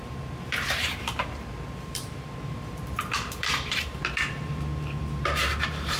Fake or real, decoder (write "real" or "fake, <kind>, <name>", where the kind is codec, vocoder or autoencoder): fake, vocoder, BigVGAN v2